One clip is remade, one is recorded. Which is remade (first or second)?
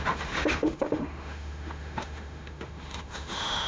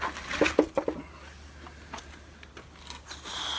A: first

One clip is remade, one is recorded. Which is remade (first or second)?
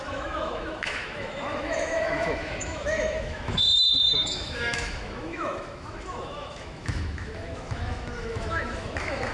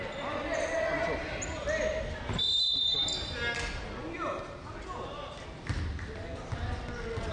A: first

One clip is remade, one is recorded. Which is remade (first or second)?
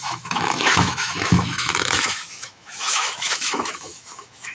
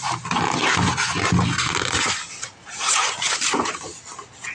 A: first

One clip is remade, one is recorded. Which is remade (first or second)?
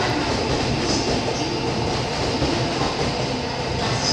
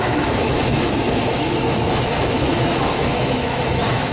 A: second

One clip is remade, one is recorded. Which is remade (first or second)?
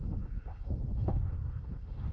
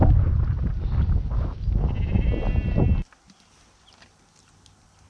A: first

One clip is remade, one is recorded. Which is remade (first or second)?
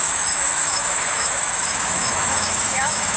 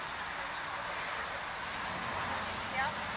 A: first